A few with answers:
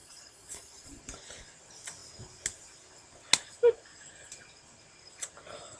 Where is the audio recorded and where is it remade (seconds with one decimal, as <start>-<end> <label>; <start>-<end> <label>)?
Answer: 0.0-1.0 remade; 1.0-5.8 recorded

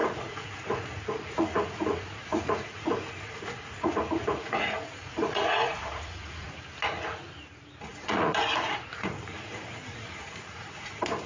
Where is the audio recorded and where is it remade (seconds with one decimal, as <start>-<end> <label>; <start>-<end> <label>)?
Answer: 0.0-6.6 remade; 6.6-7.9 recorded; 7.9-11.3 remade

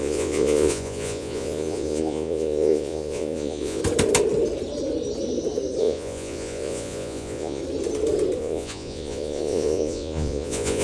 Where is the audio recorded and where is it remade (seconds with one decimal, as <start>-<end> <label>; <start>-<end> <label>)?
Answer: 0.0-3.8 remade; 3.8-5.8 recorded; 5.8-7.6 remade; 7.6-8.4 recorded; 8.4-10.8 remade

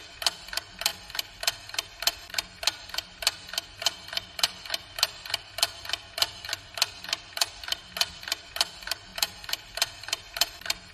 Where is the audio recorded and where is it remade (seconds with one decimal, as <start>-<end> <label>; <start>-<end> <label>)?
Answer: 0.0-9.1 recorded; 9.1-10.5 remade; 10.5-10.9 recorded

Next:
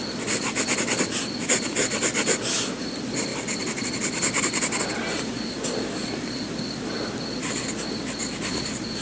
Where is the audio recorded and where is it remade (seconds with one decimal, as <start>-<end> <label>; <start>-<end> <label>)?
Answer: 0.0-9.0 recorded

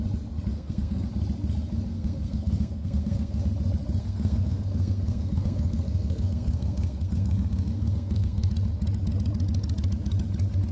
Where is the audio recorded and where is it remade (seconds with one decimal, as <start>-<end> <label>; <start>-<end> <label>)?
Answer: 0.0-0.5 recorded; 0.5-1.1 remade; 1.1-1.9 recorded; 1.9-3.4 remade; 3.4-4.0 recorded; 4.0-8.5 remade; 8.5-10.7 recorded

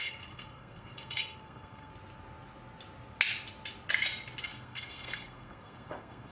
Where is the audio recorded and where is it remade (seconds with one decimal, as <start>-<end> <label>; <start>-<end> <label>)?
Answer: 0.0-1.9 remade; 1.9-4.4 recorded; 4.4-6.3 remade